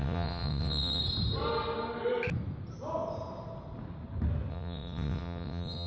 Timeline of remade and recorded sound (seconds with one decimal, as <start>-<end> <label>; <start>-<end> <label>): 0.0-1.0 remade; 1.0-4.5 recorded; 4.5-5.9 remade